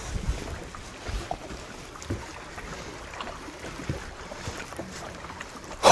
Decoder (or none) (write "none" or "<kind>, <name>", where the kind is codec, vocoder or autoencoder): none